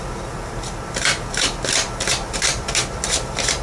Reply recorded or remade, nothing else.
recorded